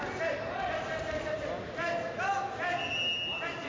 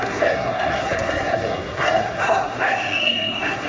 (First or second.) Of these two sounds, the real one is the first